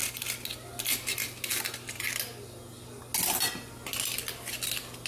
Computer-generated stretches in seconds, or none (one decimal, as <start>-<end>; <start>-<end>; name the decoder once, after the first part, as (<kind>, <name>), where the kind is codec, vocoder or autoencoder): none